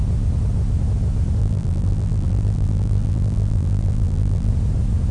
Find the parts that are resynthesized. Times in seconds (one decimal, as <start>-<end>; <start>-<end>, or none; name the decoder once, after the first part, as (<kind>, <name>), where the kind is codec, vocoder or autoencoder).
1.4-4.5 (vocoder, BigVGAN v2)